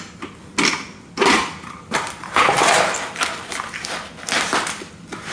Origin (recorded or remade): recorded